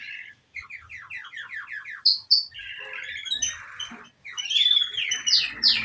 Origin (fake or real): real